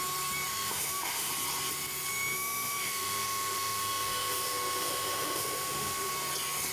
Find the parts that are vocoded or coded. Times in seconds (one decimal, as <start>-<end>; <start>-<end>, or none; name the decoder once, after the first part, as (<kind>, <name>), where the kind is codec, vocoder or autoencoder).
0.5-1.3 (autoencoder, DAC-VAE); 2.1-6.1